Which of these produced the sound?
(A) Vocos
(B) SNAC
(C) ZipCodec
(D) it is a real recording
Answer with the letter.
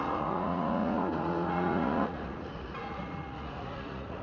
A